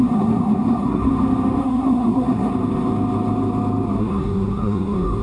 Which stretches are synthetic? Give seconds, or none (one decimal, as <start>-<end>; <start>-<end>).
0.0-1.1; 1.6-2.5; 4.0-5.2